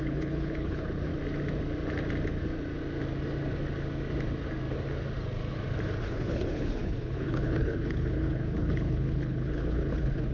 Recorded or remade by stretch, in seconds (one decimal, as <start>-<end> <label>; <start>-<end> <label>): 0.0-1.1 remade; 1.1-6.0 recorded; 6.0-10.3 remade

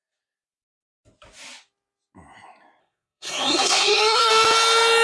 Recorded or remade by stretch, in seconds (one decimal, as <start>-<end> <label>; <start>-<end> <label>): 0.0-2.8 recorded; 2.8-4.3 remade; 4.3-5.0 recorded